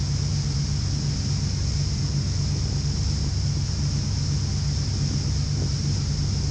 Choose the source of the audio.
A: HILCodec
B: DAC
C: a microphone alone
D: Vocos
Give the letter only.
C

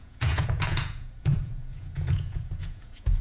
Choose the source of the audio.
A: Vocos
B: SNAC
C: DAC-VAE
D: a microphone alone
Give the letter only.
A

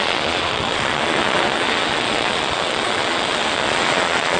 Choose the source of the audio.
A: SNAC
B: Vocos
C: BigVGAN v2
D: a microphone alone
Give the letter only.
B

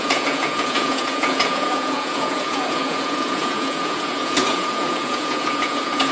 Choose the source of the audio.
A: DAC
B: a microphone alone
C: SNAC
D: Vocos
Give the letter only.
D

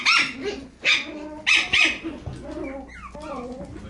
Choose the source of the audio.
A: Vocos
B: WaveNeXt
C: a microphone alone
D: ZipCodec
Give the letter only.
C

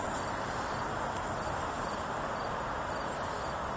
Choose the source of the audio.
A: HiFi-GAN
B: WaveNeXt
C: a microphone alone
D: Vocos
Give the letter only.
C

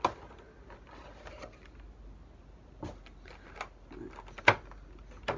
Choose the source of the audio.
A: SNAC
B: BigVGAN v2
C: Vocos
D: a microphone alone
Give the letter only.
D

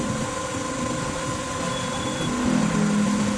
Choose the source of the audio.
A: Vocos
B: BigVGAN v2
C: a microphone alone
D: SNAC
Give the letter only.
C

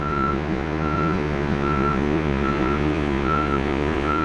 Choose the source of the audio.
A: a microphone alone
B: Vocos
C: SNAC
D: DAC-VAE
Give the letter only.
B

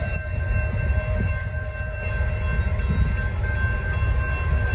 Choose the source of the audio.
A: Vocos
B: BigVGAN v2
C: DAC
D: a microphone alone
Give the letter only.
D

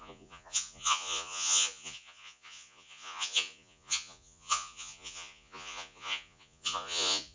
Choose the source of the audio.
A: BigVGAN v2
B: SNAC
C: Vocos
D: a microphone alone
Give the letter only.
C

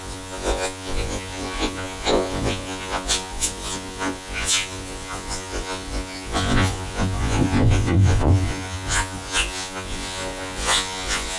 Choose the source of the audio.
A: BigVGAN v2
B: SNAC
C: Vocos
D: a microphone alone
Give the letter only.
C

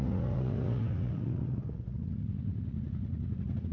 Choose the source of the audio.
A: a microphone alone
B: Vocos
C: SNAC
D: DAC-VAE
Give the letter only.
B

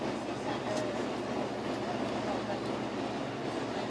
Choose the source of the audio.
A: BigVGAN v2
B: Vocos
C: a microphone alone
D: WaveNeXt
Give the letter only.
C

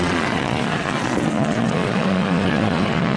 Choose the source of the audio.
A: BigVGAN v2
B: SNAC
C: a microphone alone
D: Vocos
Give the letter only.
D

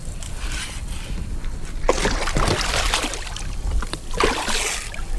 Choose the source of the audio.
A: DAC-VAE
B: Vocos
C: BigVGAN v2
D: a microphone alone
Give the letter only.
D